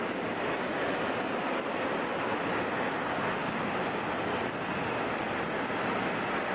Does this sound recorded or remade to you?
recorded